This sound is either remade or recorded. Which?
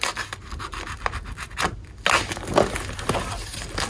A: recorded